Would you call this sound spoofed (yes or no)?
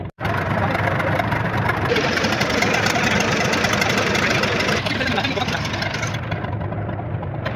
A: yes